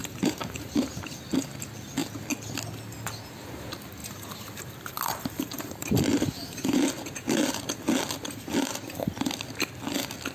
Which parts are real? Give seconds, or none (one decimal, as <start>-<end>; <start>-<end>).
0.7-4.0; 6.9-10.3